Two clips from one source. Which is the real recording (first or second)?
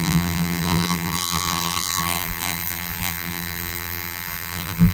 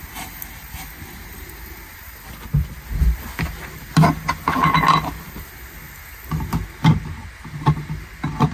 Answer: second